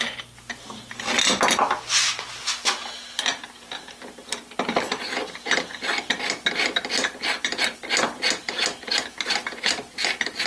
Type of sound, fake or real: real